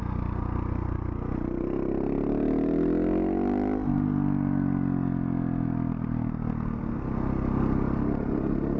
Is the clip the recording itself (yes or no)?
yes